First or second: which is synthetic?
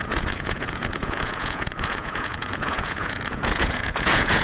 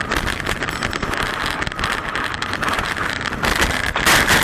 first